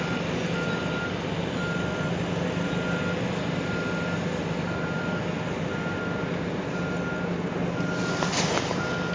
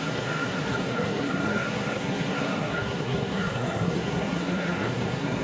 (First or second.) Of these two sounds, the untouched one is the first